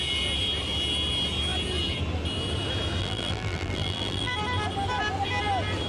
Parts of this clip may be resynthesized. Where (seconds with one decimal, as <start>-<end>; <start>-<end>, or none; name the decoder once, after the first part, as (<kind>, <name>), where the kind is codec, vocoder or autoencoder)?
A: 3.0-4.3 (vocoder, BigVGAN v2)